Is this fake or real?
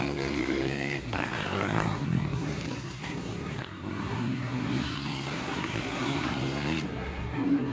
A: fake